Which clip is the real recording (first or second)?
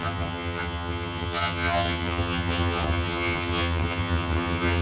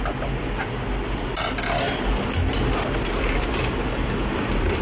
second